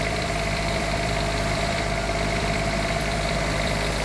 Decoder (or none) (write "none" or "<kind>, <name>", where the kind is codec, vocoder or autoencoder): vocoder, BigVGAN v2